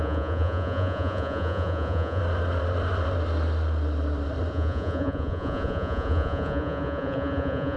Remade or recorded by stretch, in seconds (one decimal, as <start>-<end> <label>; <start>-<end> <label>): 0.0-2.2 remade; 2.2-4.5 recorded; 4.5-7.8 remade